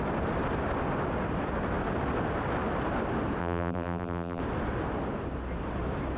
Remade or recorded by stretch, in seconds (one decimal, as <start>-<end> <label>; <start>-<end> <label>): 0.0-3.4 recorded; 3.4-4.4 remade; 4.4-6.2 recorded